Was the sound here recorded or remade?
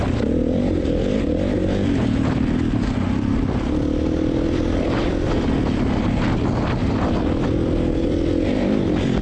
recorded